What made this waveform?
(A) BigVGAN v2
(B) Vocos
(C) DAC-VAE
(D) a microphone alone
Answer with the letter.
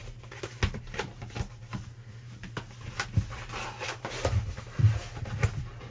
D